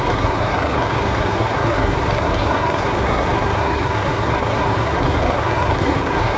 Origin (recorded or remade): remade